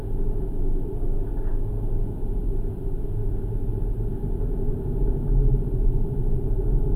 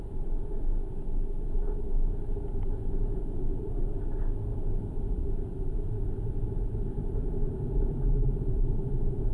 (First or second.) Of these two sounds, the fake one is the second